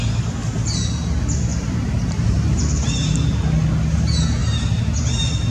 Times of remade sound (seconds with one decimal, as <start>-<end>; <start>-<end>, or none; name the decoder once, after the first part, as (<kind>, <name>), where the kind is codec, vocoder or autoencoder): 1.5-2.6 (vocoder, BigVGAN v2); 4.4-5.0